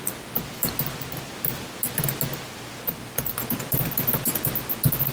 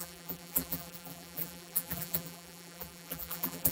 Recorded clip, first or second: first